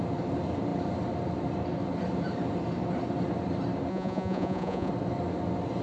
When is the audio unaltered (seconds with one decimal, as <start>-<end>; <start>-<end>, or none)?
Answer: 0.0-3.9; 4.9-5.8